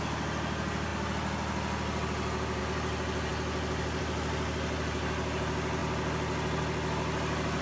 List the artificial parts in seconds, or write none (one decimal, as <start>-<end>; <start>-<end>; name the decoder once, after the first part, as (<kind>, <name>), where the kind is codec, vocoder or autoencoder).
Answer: none